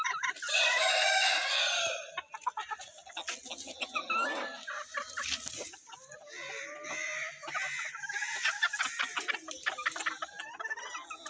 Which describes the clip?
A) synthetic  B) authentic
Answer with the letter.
B